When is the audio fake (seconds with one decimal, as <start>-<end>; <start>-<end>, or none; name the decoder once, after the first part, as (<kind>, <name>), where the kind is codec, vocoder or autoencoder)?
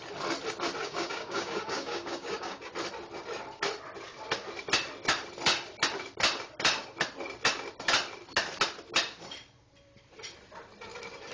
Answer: 0.8-2.7 (codec, DAC)